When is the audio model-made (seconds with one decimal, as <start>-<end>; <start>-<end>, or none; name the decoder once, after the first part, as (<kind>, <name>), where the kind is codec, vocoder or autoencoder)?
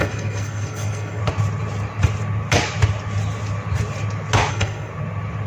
0.0-1.2 (codec, SNAC); 4.5-4.9